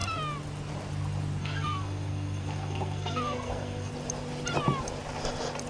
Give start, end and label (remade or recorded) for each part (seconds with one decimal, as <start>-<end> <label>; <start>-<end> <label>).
0.0-1.4 recorded; 1.4-3.9 remade; 3.9-5.7 recorded